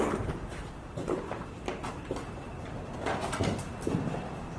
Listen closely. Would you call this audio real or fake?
real